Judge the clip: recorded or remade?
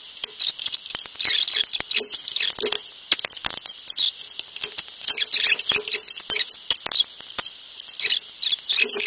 recorded